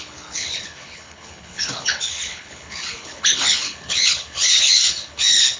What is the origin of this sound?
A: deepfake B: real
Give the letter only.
A